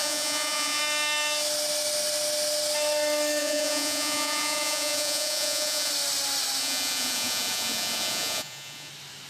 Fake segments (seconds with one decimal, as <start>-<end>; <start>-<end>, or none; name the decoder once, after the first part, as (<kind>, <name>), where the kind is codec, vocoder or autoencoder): 0.0-0.8 (vocoder, Vocos); 3.4-5.9; 6.6-8.9